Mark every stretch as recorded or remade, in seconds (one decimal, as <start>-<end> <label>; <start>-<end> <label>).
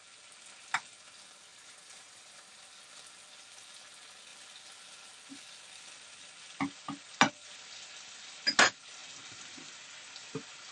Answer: 0.0-1.5 recorded; 1.5-2.6 remade; 2.6-10.7 recorded